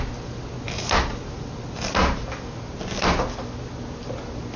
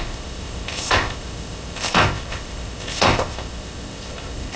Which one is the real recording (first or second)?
first